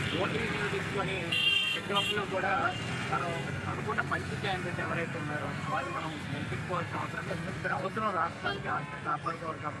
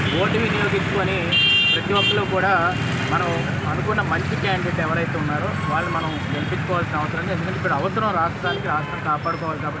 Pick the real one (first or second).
second